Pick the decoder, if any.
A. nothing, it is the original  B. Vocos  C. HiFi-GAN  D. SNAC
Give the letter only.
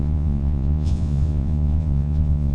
B